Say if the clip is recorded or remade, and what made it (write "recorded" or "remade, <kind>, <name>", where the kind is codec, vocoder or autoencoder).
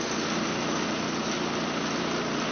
recorded